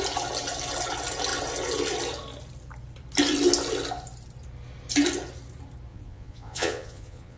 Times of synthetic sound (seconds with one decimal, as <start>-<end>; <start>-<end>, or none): 5.9-7.4